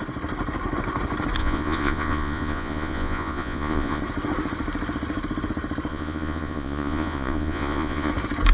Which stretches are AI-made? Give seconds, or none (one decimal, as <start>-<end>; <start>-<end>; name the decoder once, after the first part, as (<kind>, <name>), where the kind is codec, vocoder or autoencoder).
1.4-4.0 (vocoder, Vocos); 5.9-8.1